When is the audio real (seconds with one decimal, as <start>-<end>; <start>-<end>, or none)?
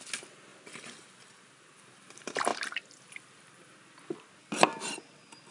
0.0-0.5; 1.8-4.4; 5.0-5.5